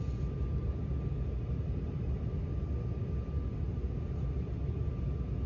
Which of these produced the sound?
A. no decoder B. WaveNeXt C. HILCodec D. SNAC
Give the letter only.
A